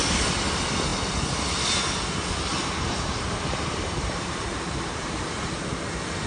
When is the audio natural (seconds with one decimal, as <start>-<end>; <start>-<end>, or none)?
0.0-2.5